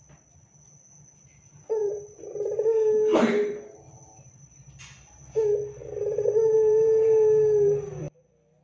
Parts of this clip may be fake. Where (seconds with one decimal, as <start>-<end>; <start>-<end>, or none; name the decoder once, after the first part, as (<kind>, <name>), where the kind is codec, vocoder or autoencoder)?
1.8-4.7 (vocoder, BigVGAN v2); 5.8-8.1